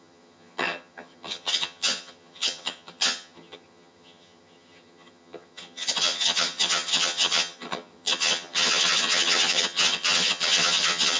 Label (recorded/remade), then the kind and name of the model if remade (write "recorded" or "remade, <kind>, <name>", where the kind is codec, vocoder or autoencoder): remade, vocoder, HiFi-GAN